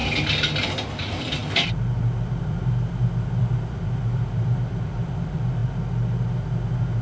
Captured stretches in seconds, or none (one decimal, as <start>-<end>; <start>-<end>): 0.0-0.9; 1.4-2.0; 5.6-7.0